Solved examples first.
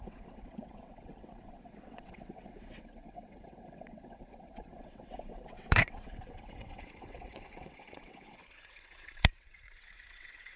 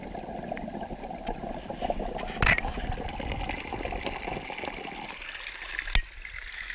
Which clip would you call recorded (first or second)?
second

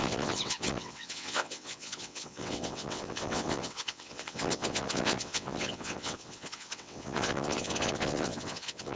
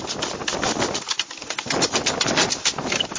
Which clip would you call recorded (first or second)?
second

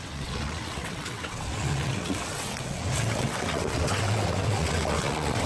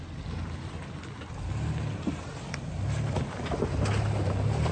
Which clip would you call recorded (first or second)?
second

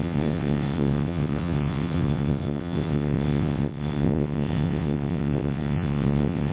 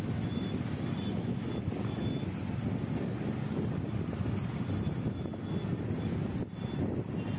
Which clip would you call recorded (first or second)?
second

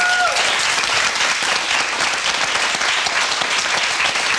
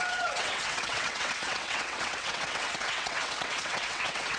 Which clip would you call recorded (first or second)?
first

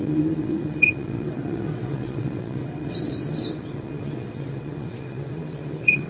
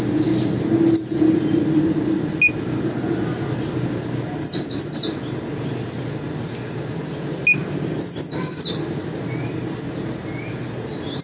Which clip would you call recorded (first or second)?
second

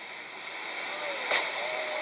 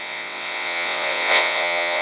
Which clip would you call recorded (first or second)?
first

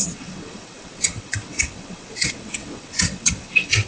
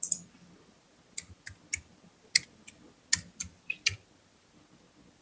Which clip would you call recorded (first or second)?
second